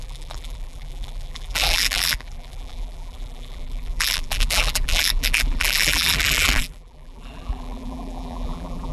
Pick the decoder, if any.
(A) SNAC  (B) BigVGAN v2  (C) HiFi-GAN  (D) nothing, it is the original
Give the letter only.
B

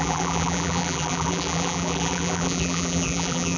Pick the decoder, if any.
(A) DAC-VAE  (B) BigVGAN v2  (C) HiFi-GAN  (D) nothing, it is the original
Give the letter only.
B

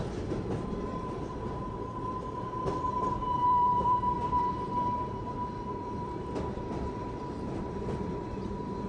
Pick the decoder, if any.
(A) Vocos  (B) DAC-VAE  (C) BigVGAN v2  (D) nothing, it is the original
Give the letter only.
C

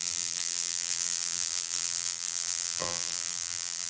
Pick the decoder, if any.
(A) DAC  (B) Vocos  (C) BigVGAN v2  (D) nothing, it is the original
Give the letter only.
C